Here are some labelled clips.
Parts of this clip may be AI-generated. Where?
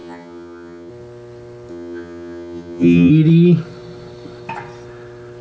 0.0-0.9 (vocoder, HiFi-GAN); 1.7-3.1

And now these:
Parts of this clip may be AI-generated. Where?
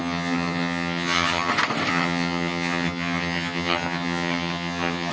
0.0-1.5 (vocoder, HiFi-GAN); 1.9-5.1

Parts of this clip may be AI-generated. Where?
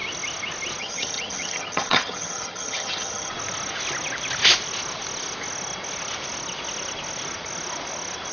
0.8-3.3 (vocoder, HiFi-GAN)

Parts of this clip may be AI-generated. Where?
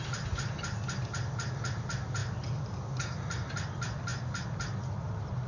none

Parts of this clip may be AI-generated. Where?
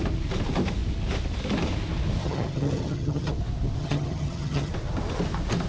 2.2-3.3 (vocoder, HiFi-GAN); 3.8-4.7